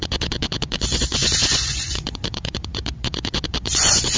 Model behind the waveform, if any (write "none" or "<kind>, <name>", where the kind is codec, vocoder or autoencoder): vocoder, Vocos